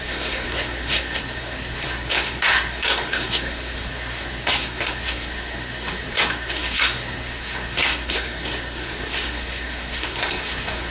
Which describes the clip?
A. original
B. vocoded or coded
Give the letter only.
B